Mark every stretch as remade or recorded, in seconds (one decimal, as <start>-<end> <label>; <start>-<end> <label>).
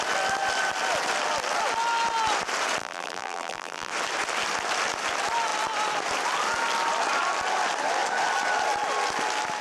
0.0-2.8 recorded; 2.8-3.9 remade; 3.9-9.6 recorded